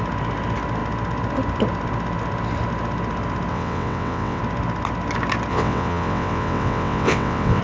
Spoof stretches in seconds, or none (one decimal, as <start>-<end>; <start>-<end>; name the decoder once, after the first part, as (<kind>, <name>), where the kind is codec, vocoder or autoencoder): 3.5-4.4 (vocoder, WaveNeXt); 5.5-7.6